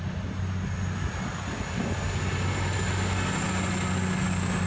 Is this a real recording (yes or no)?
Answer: yes